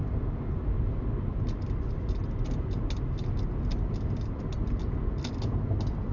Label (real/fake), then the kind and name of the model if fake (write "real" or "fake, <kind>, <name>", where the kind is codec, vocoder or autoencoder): real